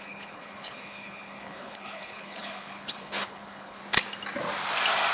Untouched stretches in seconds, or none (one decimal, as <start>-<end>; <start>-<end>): 3.8-5.1